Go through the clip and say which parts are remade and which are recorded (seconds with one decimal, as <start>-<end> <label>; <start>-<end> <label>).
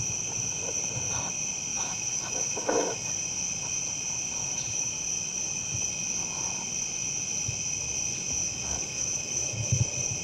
0.0-1.7 recorded; 1.7-3.1 remade; 3.1-4.4 recorded; 4.4-5.0 remade; 5.0-8.4 recorded; 8.4-9.7 remade; 9.7-10.2 recorded